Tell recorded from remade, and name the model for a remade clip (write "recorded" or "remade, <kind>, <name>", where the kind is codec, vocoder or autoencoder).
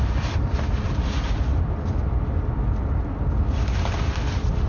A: recorded